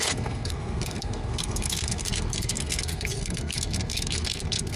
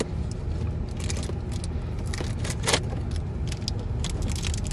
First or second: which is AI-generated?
first